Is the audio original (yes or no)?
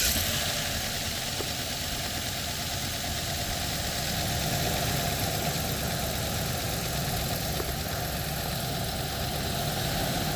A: yes